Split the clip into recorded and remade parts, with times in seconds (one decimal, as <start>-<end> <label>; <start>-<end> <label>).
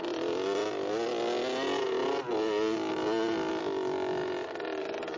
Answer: 0.0-5.2 recorded